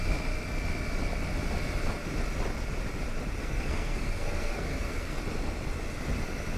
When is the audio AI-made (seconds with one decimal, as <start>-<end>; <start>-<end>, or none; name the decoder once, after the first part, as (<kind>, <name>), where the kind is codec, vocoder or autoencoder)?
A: 3.4-5.2 (codec, SNAC)